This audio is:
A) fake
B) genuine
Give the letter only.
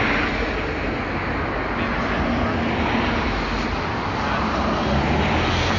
B